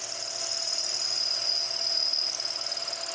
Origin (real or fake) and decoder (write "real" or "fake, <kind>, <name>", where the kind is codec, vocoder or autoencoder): real